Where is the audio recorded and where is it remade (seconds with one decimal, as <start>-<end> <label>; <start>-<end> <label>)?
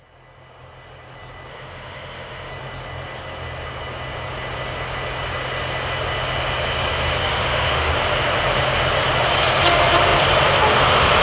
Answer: 0.0-1.5 recorded; 1.5-2.5 remade; 2.5-7.2 recorded; 7.2-7.9 remade; 7.9-11.2 recorded